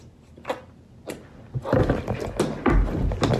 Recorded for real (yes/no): yes